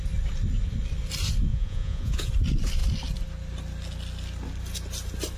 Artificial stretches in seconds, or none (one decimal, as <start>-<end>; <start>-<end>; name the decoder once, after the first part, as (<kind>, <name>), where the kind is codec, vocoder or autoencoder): 1.5-2.3 (vocoder, Vocos)